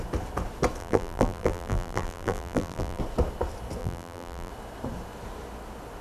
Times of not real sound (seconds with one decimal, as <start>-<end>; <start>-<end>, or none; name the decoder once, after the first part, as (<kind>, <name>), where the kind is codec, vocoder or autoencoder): 0.8-3.0 (vocoder, BigVGAN v2); 3.8-4.5